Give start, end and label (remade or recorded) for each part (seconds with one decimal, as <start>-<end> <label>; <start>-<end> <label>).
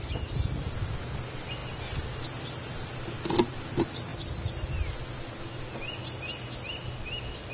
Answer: 0.0-7.5 recorded